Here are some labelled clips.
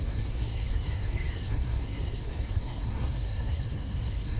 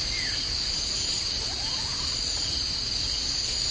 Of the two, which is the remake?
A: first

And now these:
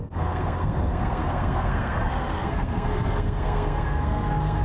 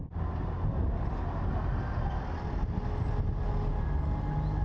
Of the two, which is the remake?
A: first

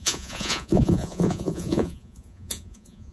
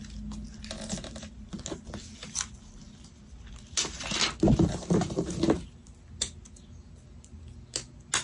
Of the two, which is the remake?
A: first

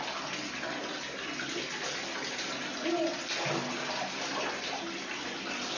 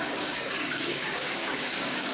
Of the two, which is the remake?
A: second